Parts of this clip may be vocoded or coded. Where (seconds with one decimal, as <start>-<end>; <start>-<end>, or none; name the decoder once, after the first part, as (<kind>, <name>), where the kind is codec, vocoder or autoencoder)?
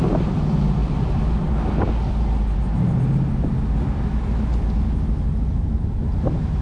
none